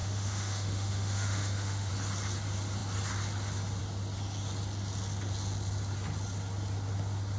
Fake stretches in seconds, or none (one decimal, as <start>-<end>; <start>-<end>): 0.0-1.9